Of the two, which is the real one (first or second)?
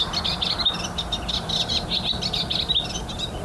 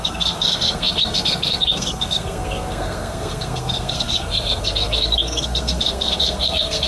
first